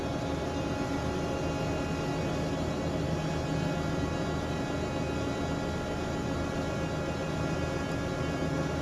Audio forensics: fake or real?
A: fake